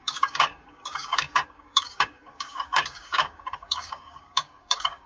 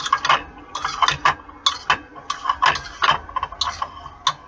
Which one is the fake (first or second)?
first